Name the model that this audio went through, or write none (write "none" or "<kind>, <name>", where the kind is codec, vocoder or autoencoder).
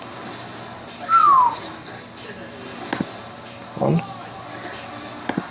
none